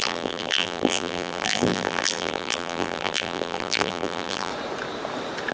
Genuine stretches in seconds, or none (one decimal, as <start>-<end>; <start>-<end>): 4.5-5.5